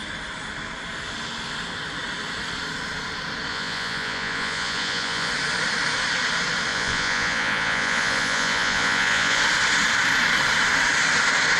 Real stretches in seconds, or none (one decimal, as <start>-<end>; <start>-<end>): 0.0-3.5; 5.3-6.7; 9.4-11.6